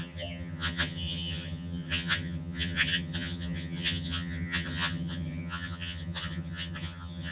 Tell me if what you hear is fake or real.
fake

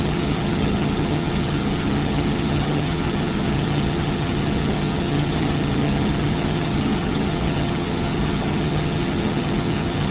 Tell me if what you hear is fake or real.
fake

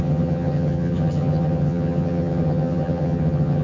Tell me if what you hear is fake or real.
fake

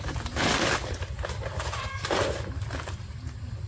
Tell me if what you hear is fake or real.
real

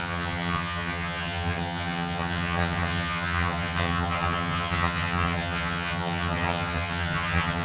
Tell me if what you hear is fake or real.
fake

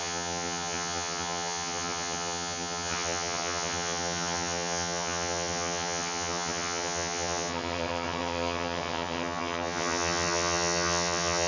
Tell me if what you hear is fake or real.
fake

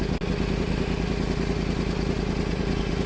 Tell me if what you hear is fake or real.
real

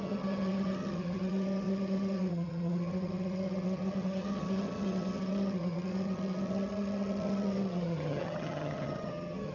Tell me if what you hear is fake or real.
fake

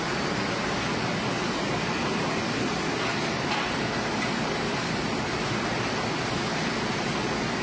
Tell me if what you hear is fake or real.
real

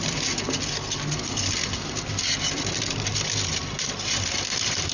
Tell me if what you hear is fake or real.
real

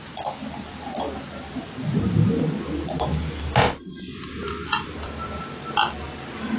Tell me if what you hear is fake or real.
real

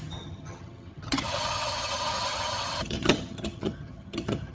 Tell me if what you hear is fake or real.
fake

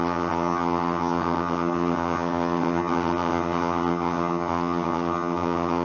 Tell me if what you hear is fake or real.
fake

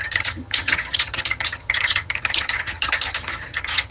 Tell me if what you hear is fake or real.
fake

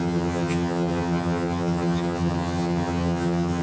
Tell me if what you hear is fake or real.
fake